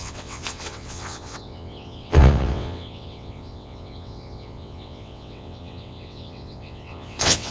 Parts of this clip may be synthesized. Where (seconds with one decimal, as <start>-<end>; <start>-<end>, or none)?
0.0-7.5